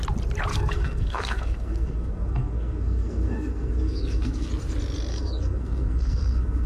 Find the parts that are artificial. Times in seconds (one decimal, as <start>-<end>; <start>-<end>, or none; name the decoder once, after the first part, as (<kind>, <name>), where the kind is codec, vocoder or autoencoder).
0.5-4.5 (codec, SNAC); 5.1-6.7